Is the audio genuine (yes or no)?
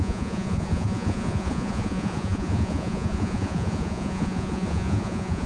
no